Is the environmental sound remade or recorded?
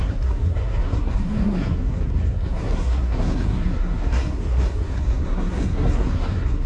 remade